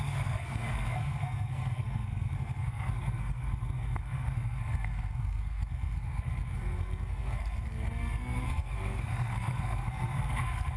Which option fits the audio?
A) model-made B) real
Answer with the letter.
A